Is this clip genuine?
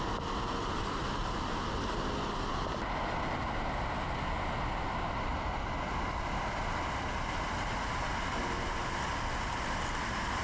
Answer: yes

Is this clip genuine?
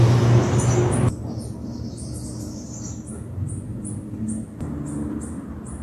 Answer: yes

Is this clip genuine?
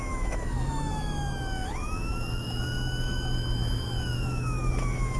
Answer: no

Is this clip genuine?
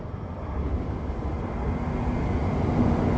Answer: yes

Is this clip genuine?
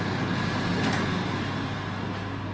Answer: yes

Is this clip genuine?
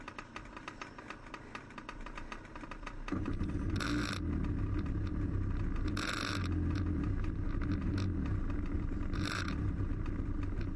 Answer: yes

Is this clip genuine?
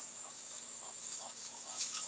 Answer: no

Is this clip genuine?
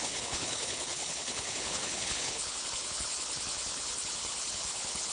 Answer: no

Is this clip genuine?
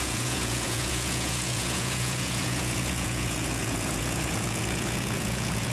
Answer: no